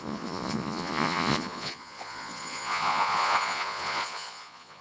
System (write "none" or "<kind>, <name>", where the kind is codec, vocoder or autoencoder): vocoder, Vocos